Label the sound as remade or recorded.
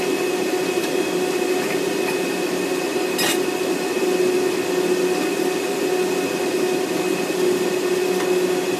recorded